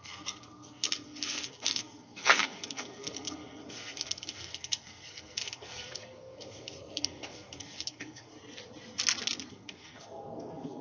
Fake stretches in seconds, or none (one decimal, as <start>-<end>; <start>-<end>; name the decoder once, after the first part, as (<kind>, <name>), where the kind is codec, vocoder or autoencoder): 0.0-8.3 (codec, SNAC); 9.5-10.8